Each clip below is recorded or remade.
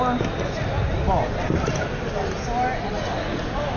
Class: recorded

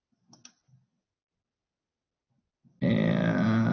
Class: recorded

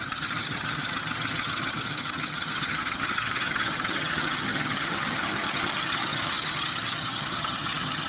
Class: remade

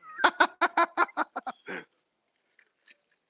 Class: recorded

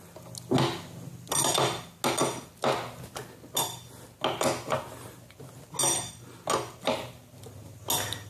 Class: recorded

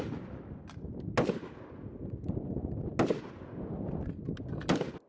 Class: recorded